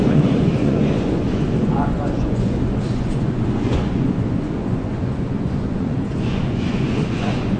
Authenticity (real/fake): fake